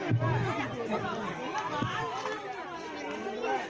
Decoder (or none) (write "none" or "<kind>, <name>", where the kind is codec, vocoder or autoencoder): none